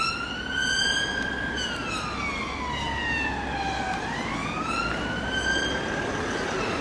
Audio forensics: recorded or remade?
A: recorded